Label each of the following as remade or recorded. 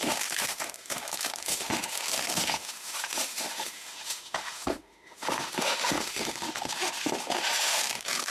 remade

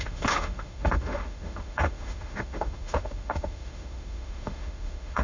remade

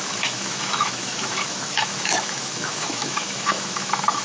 remade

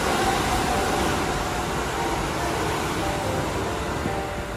recorded